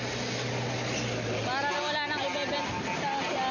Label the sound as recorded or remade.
recorded